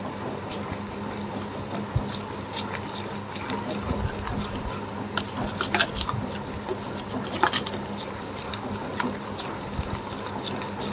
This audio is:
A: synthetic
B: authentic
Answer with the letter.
B